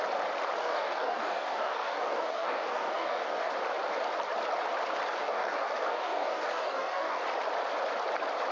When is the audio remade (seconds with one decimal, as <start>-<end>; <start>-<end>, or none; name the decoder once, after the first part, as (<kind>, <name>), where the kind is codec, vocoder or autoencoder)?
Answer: 0.6-3.5 (codec, DAC); 5.2-7.2